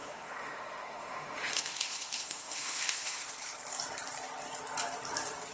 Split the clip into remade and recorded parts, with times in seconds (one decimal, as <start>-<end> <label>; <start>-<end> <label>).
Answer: 0.0-3.3 remade; 3.3-5.5 recorded